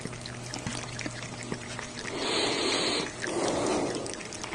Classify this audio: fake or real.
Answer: real